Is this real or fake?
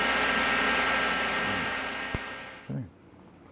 real